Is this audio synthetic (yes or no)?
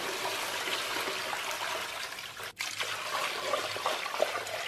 no